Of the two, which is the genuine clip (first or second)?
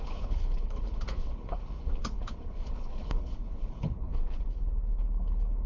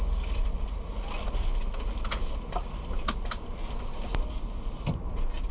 second